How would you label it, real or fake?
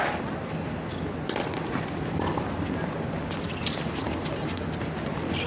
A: real